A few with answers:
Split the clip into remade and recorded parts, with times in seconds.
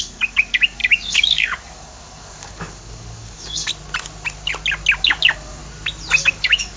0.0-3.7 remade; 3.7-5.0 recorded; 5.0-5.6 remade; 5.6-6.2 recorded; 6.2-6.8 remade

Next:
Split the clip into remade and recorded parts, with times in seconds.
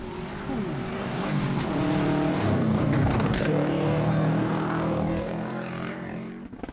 0.0-0.9 recorded; 0.9-1.4 remade; 1.4-2.3 recorded; 2.3-6.3 remade; 6.3-6.7 recorded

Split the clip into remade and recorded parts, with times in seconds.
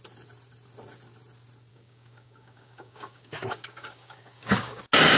0.0-1.7 recorded; 1.7-4.8 remade; 4.8-5.2 recorded